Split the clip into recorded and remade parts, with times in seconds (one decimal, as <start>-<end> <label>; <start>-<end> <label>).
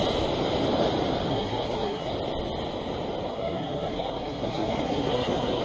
0.0-1.3 recorded; 1.3-2.1 remade; 2.1-3.3 recorded; 3.3-5.6 remade